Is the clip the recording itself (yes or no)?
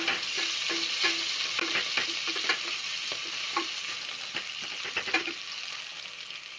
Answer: yes